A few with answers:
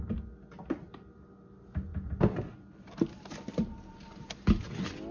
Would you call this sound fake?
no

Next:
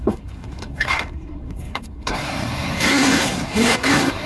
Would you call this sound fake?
yes